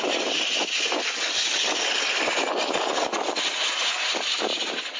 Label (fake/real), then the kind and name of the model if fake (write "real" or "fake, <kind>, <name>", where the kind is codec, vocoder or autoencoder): real